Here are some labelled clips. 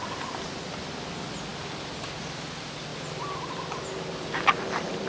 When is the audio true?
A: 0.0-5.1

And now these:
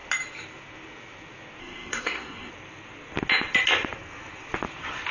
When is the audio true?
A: 0.0-1.6; 2.5-5.1

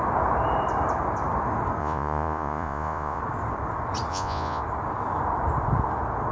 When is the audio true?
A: 0.0-1.8; 3.2-4.1; 4.6-6.3

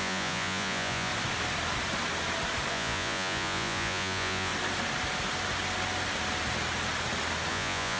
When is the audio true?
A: 1.1-2.7; 4.5-7.5

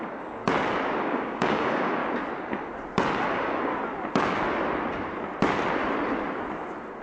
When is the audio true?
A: 0.4-1.0; 2.0-3.3; 3.7-7.0

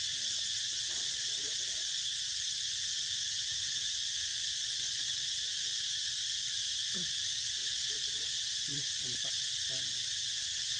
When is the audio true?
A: 0.0-0.7; 2.3-4.3; 5.1-7.6; 8.9-10.8